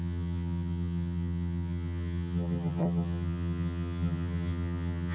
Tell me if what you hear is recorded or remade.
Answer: remade